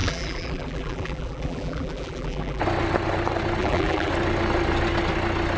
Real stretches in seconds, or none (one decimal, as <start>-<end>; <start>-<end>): 2.6-3.6; 4.1-5.6